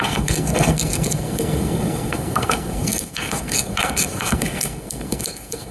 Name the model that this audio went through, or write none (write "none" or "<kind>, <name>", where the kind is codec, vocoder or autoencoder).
codec, SNAC